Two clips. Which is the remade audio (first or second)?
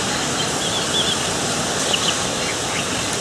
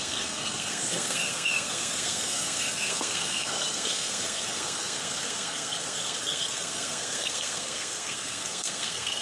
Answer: second